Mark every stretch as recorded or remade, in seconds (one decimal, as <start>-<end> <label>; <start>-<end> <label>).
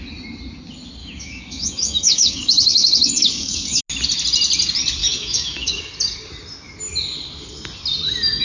0.0-1.0 recorded; 1.0-3.8 remade; 3.8-5.0 recorded; 5.0-5.7 remade; 5.7-8.4 recorded